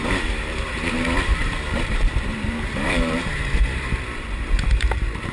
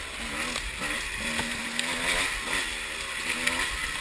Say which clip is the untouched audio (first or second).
second